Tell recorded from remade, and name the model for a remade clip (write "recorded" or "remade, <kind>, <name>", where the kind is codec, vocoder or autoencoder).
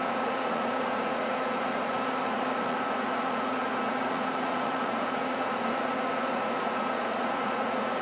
remade, vocoder, Vocos